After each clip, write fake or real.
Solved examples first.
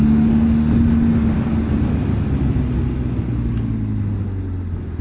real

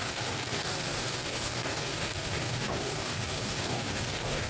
fake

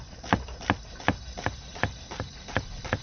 real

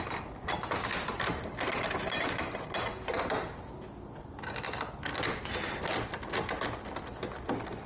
real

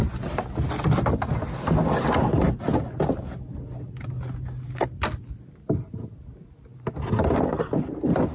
real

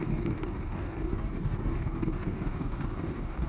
fake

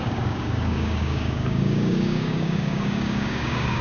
fake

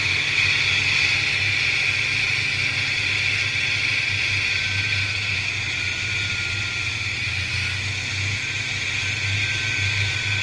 real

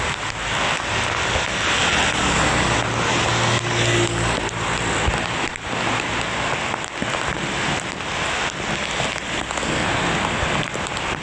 real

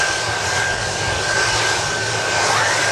fake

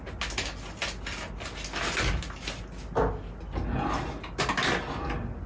real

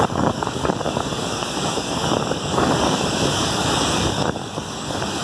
fake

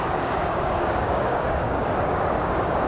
fake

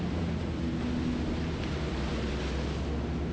real